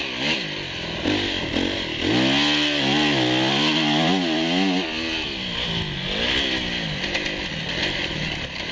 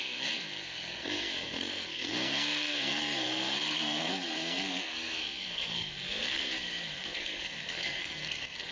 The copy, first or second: second